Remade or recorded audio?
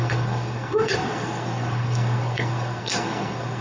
remade